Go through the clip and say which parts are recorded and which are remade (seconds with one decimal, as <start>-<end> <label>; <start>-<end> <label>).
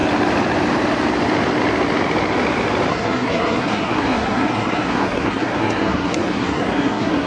0.0-2.9 recorded; 2.9-7.3 remade